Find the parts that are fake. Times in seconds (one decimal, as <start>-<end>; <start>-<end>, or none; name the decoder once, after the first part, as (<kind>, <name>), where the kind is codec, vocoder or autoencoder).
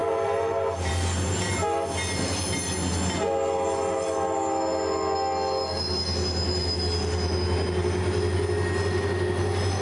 0.0-0.9 (vocoder, BigVGAN v2)